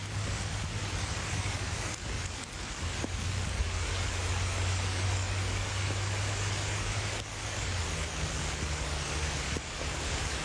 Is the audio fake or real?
fake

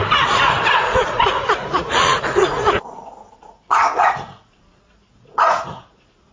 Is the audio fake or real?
fake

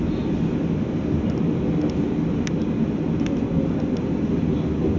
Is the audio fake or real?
real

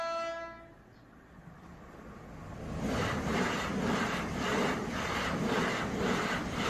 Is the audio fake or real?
real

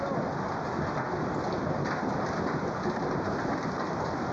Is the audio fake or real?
real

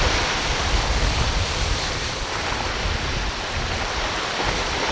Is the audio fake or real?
real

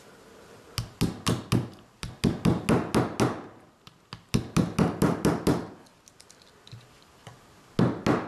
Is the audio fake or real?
real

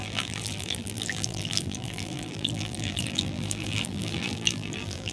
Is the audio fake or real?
fake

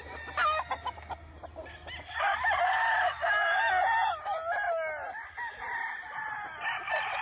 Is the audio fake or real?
real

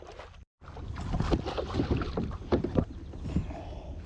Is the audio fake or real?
real